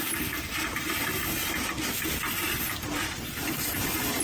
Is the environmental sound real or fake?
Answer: real